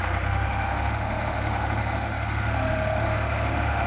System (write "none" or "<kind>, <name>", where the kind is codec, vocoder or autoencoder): autoencoder, DAC-VAE